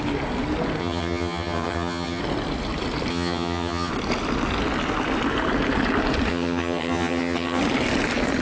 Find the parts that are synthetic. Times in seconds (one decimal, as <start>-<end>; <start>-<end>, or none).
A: 0.8-2.2; 3.1-3.9; 6.3-7.6